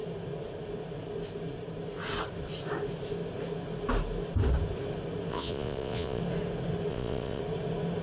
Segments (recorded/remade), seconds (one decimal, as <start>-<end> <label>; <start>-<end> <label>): 0.0-5.3 recorded; 5.3-6.2 remade; 6.2-6.9 recorded; 6.9-7.4 remade; 7.4-8.0 recorded